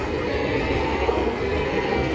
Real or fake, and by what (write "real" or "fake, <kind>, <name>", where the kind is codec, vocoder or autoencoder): fake, codec, SNAC